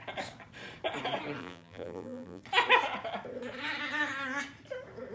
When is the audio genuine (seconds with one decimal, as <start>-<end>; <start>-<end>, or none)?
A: 0.0-1.4; 2.4-5.1

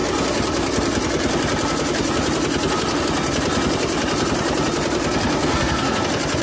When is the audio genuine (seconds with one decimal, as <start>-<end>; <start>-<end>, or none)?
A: 0.0-5.4; 6.0-6.4